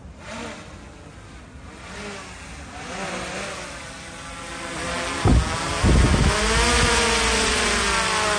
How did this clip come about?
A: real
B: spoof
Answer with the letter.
A